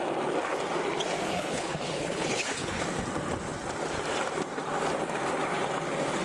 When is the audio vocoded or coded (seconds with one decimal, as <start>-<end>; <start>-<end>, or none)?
1.3-2.8